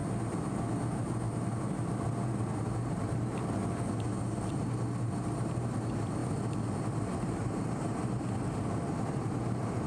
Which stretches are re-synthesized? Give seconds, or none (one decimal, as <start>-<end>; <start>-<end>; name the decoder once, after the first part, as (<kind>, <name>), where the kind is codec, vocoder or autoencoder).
2.9-3.6 (vocoder, BigVGAN v2); 4.5-6.2; 6.8-9.9